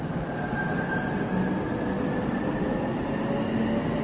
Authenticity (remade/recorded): recorded